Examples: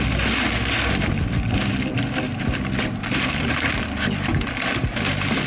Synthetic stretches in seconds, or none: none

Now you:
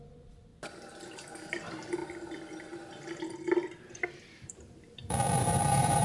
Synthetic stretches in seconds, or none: 0.0-0.5 (vocoder, BigVGAN v2); 1.1-6.0